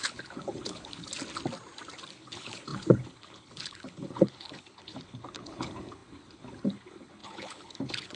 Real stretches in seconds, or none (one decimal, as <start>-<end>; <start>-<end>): 1.1-2.1